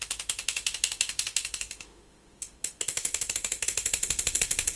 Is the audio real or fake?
fake